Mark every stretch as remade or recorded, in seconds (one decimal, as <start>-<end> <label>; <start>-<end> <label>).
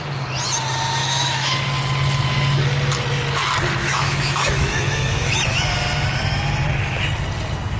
0.0-1.0 recorded; 1.0-1.6 remade; 1.6-3.8 recorded; 3.8-5.4 remade; 5.4-7.8 recorded